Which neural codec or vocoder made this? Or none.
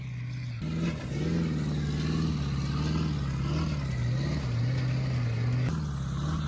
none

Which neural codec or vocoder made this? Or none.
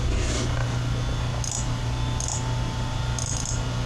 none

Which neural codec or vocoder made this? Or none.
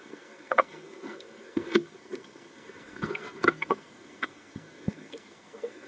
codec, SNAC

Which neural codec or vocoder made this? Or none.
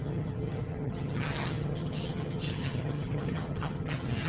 vocoder, HiFi-GAN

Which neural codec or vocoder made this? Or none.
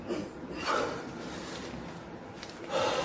none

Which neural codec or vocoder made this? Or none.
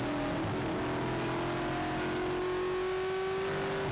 none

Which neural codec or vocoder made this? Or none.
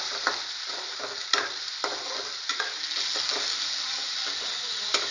none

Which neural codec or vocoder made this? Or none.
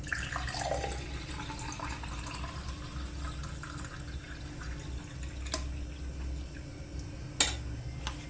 none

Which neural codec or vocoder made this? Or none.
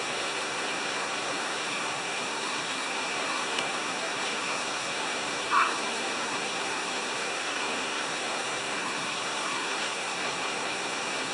codec, SNAC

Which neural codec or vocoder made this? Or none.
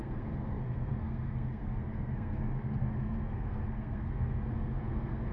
codec, SNAC